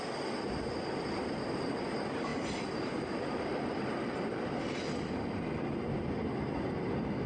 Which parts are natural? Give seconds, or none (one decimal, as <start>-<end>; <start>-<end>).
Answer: 0.0-2.3; 5.5-7.3